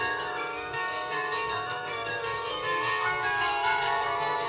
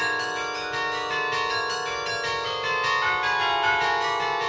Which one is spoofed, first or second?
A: first